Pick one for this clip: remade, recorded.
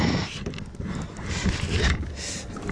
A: recorded